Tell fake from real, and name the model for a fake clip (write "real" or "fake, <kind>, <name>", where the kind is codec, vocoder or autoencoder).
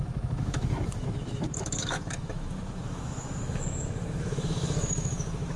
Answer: fake, autoencoder, DAC-VAE